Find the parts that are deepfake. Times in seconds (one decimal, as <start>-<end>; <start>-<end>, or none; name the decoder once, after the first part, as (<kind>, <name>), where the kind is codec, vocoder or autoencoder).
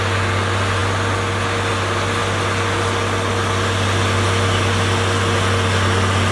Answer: none